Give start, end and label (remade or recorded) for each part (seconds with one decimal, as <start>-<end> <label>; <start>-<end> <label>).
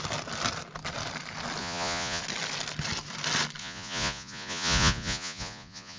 0.0-1.6 recorded; 1.6-2.2 remade; 2.2-3.6 recorded; 3.6-6.0 remade